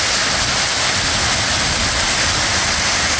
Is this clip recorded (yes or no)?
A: yes